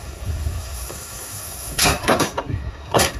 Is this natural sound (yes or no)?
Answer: no